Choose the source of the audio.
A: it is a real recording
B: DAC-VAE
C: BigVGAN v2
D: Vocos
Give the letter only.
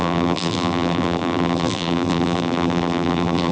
C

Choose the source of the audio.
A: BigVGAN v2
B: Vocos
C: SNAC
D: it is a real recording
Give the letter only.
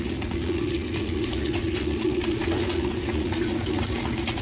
B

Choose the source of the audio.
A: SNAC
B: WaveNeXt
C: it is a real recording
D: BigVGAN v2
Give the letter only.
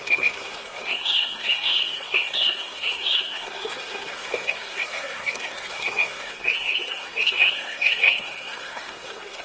A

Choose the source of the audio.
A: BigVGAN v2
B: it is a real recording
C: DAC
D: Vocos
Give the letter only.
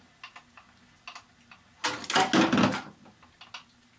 B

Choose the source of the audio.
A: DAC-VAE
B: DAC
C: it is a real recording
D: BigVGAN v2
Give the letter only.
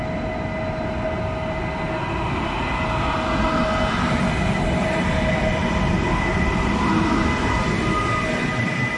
C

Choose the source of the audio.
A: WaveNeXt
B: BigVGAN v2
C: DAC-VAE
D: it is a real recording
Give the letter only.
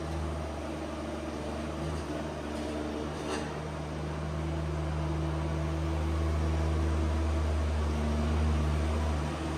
D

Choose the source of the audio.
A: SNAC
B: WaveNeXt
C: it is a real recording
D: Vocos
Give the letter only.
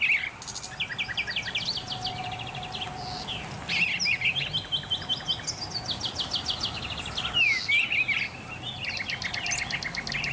C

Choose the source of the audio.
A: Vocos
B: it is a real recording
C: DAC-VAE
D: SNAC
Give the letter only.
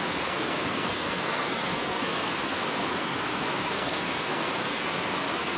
D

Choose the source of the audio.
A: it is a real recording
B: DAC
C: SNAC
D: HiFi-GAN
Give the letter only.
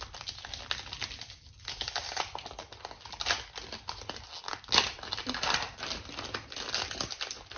A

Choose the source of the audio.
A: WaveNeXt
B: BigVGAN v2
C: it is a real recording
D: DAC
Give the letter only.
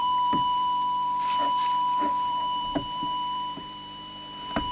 B